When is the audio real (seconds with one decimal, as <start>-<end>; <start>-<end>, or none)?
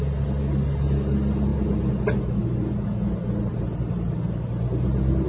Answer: 0.0-5.3